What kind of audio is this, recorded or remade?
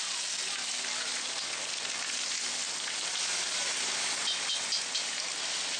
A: recorded